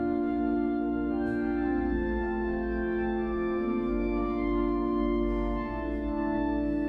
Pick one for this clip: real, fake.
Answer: fake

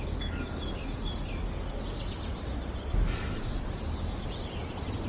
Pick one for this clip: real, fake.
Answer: real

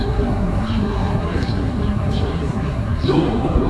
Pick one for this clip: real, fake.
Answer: fake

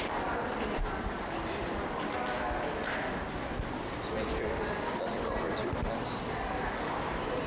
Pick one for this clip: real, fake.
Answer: real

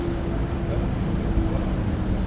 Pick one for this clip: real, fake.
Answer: real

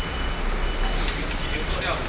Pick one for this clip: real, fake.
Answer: real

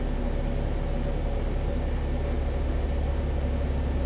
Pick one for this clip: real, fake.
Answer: real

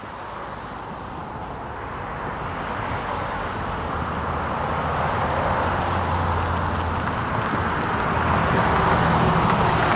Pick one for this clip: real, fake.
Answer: real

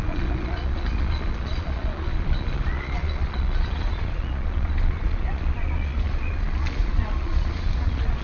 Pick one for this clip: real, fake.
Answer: fake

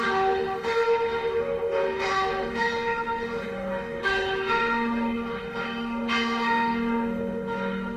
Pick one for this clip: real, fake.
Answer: fake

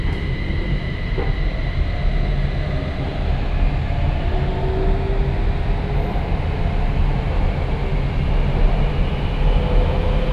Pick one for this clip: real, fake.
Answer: real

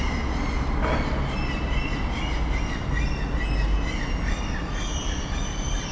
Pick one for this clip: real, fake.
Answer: real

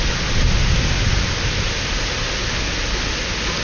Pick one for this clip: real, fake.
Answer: real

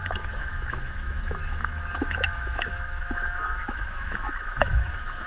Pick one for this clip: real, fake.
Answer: fake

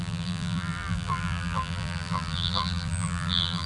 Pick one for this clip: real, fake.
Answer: fake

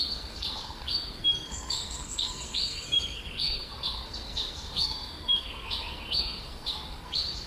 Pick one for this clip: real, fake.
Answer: fake